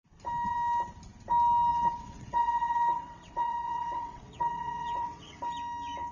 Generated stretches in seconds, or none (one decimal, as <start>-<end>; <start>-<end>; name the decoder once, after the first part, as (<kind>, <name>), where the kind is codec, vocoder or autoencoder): 1.7-5.4 (vocoder, WaveNeXt)